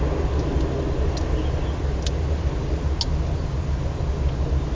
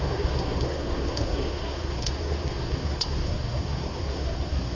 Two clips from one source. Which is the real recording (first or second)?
first